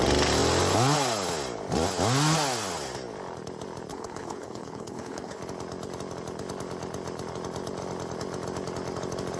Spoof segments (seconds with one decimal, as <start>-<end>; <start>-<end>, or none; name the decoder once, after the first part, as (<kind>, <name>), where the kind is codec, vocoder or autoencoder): 3.9-5.4 (codec, HILCodec)